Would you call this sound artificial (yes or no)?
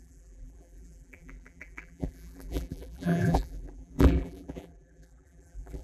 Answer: yes